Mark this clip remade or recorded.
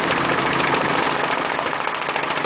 recorded